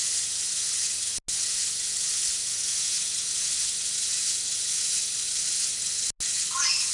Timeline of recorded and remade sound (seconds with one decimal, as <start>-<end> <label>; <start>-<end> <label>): 0.0-6.9 recorded